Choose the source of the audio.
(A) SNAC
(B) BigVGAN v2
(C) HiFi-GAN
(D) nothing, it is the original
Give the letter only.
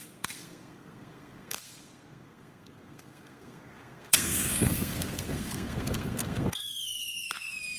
A